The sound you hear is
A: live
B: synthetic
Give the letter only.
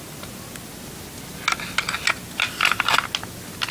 A